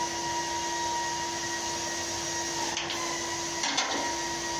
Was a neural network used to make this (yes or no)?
no